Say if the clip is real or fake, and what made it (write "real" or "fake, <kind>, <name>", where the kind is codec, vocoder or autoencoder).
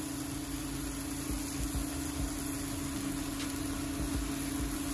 real